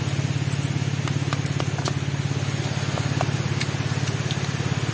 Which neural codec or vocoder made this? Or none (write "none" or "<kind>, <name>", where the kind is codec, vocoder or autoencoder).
none